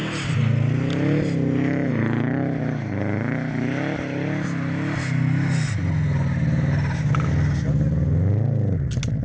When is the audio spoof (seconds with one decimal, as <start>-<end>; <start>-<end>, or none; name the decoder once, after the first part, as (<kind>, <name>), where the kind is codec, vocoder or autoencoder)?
none